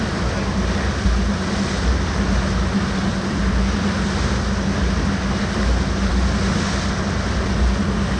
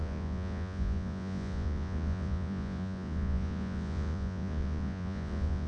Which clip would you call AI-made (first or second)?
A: second